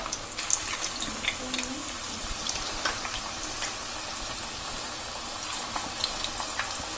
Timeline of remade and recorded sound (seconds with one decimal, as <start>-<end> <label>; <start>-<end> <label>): 0.0-1.8 recorded; 1.8-6.0 remade; 6.0-7.0 recorded